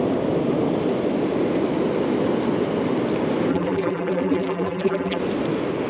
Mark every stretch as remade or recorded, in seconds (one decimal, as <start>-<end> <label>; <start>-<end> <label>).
0.0-3.5 recorded; 3.5-5.2 remade; 5.2-5.9 recorded